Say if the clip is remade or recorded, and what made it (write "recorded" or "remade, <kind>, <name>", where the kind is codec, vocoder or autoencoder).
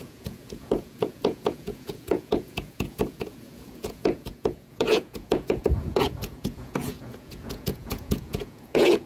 remade, vocoder, Vocos